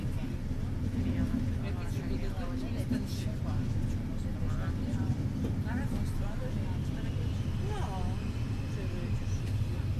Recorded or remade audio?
recorded